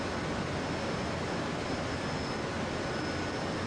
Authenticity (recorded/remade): recorded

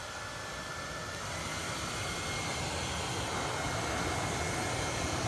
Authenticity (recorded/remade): recorded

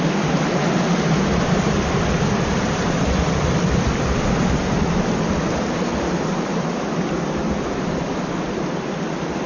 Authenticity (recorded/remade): recorded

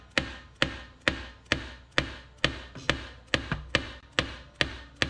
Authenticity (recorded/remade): recorded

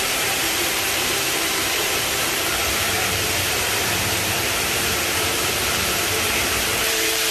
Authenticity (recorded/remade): remade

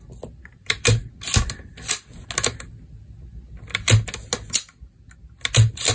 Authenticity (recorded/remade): recorded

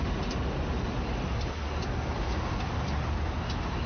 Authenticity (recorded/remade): recorded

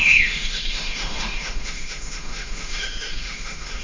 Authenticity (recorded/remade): remade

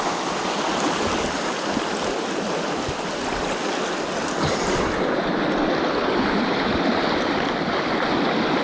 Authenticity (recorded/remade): recorded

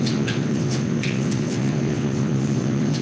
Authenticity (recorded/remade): remade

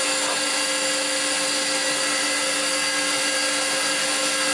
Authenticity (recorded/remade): recorded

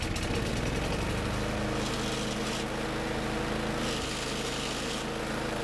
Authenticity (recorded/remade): recorded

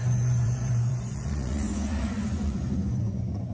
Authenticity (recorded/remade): remade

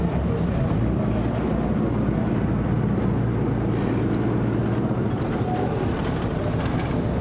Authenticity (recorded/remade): recorded